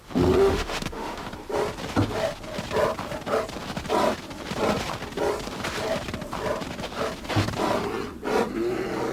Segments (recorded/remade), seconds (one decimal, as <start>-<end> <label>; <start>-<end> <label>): 0.0-0.4 recorded; 0.4-1.3 remade; 1.3-9.1 recorded